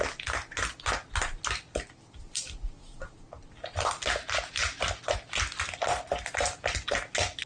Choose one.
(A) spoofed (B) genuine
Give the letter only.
B